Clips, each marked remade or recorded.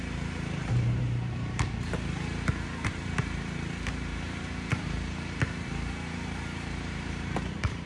remade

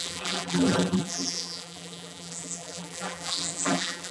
remade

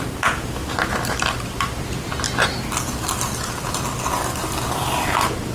recorded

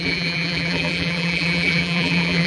remade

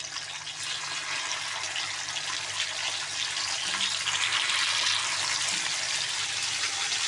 recorded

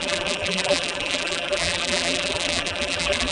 remade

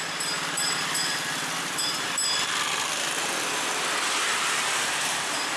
remade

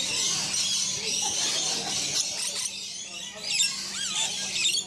remade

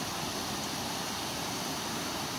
recorded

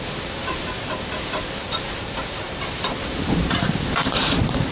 remade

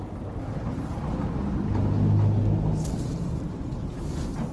recorded